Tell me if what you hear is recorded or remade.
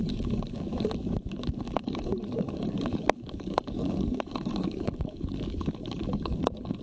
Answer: remade